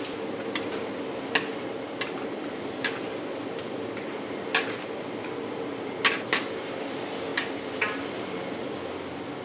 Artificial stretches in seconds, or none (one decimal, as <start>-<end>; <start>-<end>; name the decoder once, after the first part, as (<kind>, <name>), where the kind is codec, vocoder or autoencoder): none